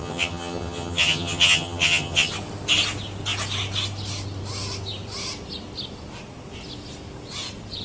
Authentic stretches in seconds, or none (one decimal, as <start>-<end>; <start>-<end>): 2.3-7.8